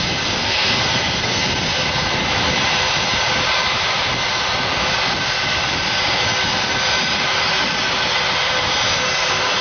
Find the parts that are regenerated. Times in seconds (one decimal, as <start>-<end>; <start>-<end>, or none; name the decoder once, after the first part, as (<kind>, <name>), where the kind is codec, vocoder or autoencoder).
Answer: 0.4-1.4 (codec, SNAC)